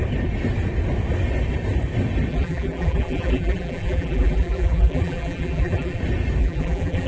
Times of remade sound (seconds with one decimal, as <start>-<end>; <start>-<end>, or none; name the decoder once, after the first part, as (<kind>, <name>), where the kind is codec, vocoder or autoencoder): 2.3-6.0 (vocoder, BigVGAN v2); 6.4-7.1